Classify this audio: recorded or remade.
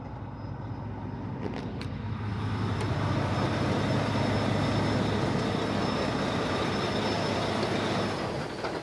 recorded